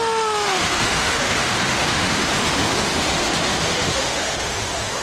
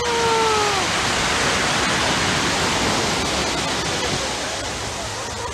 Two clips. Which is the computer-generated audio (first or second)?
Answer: first